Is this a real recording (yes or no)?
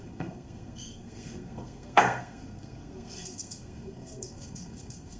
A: no